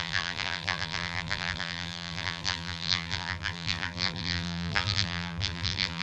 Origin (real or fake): fake